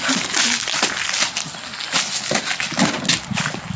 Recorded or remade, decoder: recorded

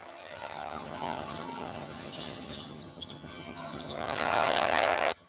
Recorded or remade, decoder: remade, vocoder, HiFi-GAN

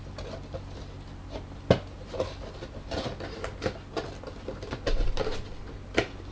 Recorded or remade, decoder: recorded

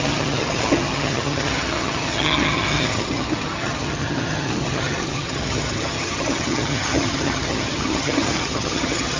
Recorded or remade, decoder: remade, vocoder, HiFi-GAN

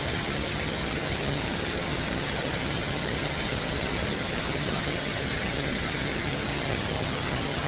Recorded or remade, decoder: remade, vocoder, HiFi-GAN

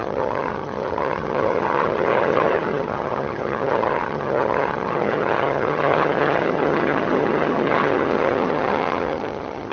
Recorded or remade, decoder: remade, vocoder, HiFi-GAN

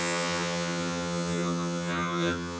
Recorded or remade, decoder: remade, vocoder, HiFi-GAN